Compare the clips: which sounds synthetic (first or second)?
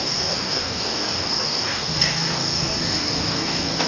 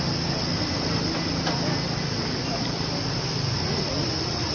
first